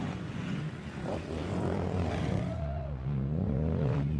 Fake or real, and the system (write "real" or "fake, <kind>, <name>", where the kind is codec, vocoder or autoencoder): fake, vocoder, Vocos